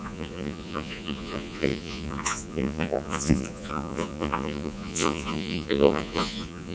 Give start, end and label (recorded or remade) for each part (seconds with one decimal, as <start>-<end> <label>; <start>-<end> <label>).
0.0-6.7 remade